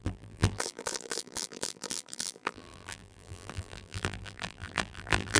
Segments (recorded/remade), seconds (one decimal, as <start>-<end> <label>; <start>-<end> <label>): 0.0-5.4 remade